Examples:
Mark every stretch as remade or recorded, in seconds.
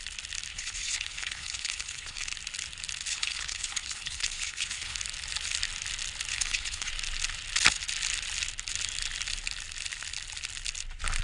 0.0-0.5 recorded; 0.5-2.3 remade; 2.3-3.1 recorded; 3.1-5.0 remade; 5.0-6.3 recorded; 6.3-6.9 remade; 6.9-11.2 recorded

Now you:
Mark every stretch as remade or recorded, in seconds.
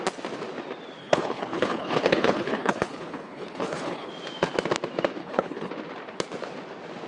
0.0-1.0 recorded; 1.0-4.1 remade; 4.1-5.2 recorded; 5.2-5.7 remade; 5.7-7.1 recorded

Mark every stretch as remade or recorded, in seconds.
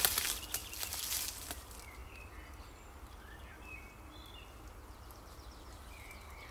0.0-6.5 recorded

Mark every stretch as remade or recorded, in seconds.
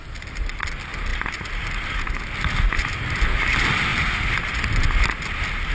0.0-5.7 recorded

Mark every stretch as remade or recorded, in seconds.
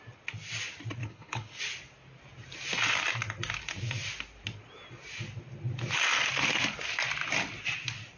0.0-1.0 recorded; 1.0-1.6 remade; 1.6-8.2 recorded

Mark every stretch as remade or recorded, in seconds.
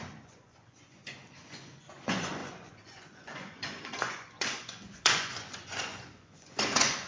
0.0-7.1 remade